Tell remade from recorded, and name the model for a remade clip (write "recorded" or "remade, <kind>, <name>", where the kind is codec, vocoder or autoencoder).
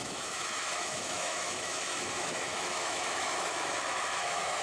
remade, autoencoder, DAC-VAE